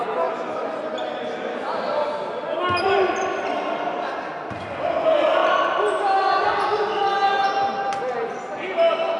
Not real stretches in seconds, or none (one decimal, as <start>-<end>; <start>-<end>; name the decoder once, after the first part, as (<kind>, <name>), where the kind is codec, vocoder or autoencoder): none